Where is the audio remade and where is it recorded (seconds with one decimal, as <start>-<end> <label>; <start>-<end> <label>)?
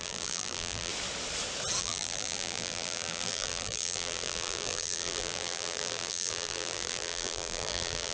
0.0-0.9 remade; 0.9-1.8 recorded; 1.8-8.1 remade